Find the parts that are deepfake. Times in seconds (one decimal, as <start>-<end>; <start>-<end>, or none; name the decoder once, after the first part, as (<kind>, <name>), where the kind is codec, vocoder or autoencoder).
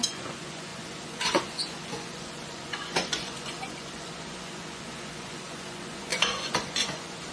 0.0-7.3 (vocoder, Vocos)